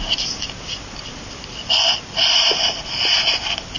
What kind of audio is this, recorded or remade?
recorded